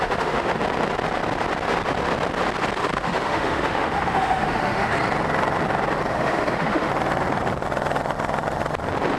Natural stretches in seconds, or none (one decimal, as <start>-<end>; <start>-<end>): 0.6-2.8; 4.9-6.1; 6.9-9.2